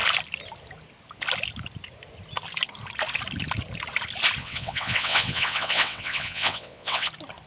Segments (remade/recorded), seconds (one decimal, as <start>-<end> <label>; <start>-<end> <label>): 0.0-4.4 recorded; 4.4-7.1 remade; 7.1-7.5 recorded